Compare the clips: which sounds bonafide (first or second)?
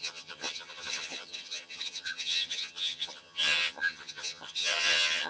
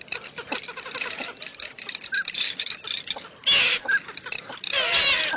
second